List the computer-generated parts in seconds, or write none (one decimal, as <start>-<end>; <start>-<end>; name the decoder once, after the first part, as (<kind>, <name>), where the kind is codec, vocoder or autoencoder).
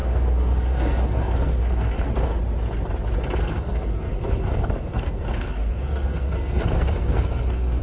0.0-2.4 (codec, SNAC); 3.4-7.8